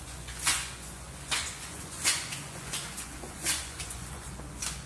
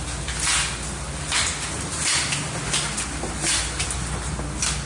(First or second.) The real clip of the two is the second